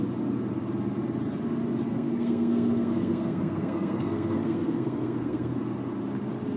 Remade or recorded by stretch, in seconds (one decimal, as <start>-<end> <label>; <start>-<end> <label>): 0.0-1.9 recorded; 1.9-5.6 remade; 5.6-6.6 recorded